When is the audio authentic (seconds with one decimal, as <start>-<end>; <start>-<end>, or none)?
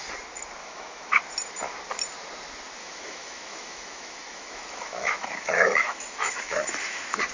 0.0-0.6; 1.2-2.8